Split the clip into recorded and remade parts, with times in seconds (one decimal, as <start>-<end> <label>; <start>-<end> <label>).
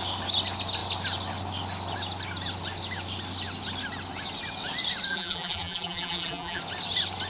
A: 0.0-5.1 recorded; 5.1-6.6 remade; 6.6-7.3 recorded